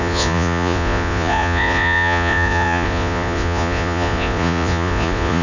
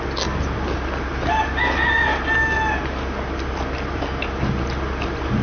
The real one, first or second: second